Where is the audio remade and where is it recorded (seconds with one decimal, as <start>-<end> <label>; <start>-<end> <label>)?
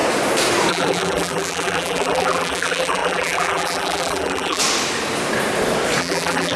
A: 0.0-0.7 recorded; 0.7-4.6 remade; 4.6-6.0 recorded; 6.0-6.6 remade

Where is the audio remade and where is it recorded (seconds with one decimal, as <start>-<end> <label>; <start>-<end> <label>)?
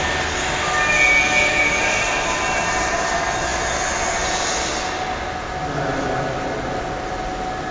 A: 0.0-1.4 recorded; 1.4-2.7 remade; 2.7-7.7 recorded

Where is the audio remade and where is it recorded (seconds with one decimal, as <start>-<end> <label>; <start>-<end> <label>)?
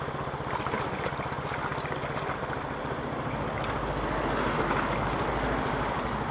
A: 0.0-6.3 recorded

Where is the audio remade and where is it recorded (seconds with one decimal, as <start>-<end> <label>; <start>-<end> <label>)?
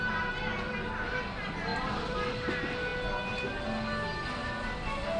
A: 0.0-1.7 recorded; 1.7-2.5 remade; 2.5-5.2 recorded